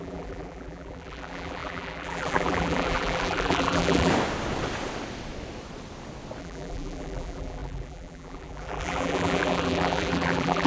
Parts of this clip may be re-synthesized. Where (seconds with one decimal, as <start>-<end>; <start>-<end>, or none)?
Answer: 0.0-4.1; 6.4-10.7